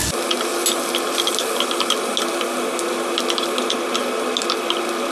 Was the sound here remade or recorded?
recorded